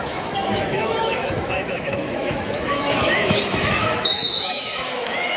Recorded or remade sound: remade